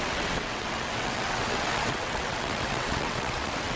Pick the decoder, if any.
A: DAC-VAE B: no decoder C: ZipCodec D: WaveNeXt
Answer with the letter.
D